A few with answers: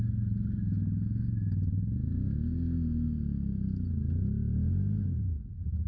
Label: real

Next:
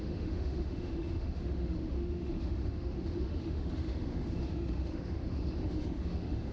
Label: fake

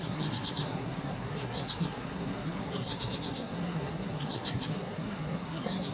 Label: fake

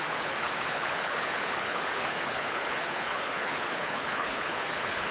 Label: fake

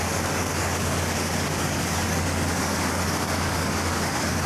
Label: fake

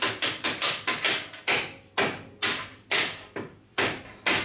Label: real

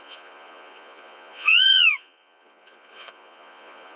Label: fake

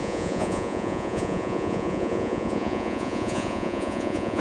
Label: fake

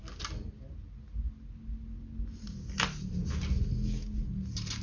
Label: real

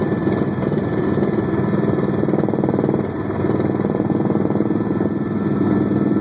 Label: fake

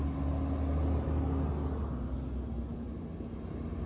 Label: real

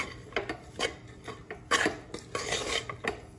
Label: real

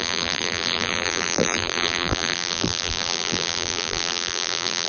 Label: fake